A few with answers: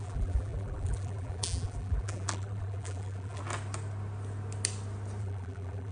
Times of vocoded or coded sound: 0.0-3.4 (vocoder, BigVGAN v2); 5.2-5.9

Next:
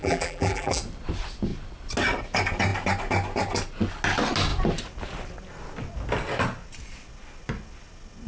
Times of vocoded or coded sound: 0.0-0.8 (vocoder, BigVGAN v2)

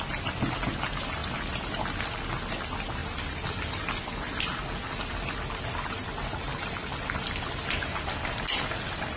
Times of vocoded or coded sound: 1.2-2.0 (vocoder, BigVGAN v2); 3.0-5.1; 6.5-9.2

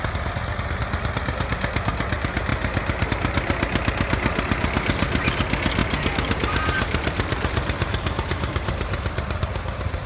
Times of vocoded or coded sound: 5.8-10.1 (vocoder, BigVGAN v2)

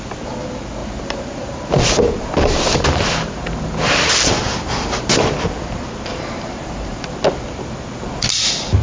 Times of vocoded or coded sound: 0.8-5.6 (vocoder, BigVGAN v2); 6.1-7.0

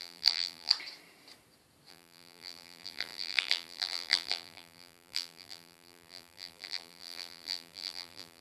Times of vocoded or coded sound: 0.0-0.7 (vocoder, BigVGAN v2); 1.9-8.4

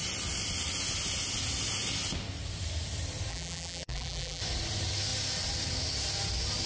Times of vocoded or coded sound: 3.3-4.4 (vocoder, BigVGAN v2)

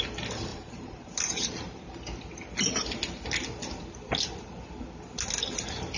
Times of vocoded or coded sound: 0.5-1.8 (vocoder, BigVGAN v2)